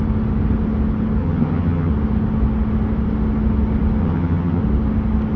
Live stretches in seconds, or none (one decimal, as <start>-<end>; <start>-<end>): 0.0-1.2; 1.9-4.0; 4.6-5.4